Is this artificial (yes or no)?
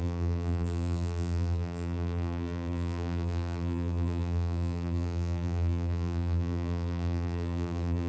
yes